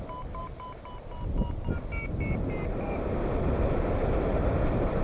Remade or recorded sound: recorded